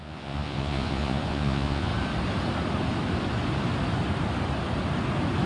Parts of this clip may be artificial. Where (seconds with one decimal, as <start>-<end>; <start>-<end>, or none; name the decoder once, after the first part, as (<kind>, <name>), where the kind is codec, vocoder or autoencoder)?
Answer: 0.0-1.9 (vocoder, Vocos)